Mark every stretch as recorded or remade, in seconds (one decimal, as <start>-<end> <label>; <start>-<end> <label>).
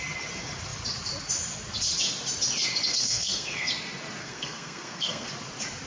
0.0-2.9 recorded; 2.9-3.7 remade; 3.7-4.2 recorded; 4.2-5.3 remade; 5.3-5.9 recorded